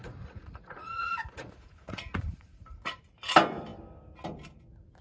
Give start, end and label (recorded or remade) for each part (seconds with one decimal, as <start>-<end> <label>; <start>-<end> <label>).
0.0-3.0 remade; 3.0-5.0 recorded